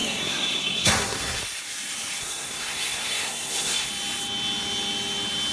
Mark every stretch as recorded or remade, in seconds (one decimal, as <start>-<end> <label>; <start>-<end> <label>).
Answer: 0.0-1.4 remade; 1.4-2.2 recorded; 2.2-3.9 remade; 3.9-5.5 recorded